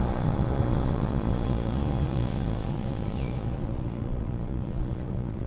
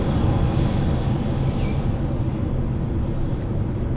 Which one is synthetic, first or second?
first